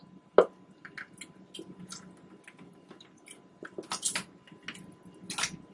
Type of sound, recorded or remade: recorded